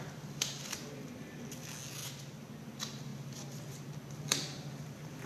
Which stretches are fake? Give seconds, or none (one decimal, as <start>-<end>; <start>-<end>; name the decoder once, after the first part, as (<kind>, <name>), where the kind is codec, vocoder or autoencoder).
none